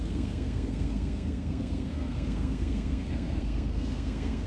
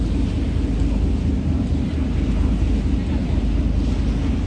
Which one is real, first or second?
second